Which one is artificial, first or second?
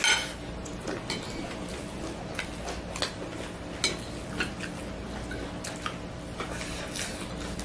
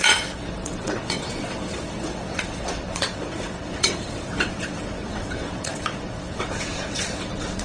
second